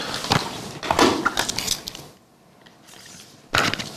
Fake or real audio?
real